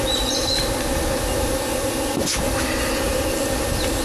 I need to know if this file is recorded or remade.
recorded